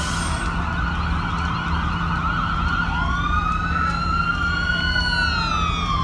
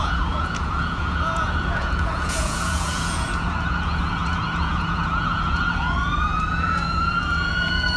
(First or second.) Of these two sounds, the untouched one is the first